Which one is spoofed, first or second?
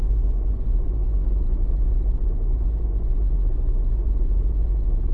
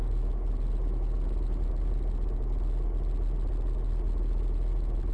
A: first